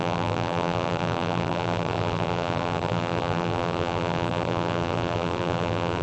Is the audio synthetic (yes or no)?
yes